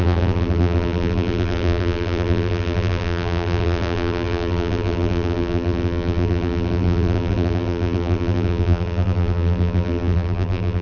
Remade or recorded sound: remade